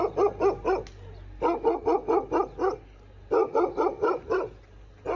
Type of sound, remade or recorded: recorded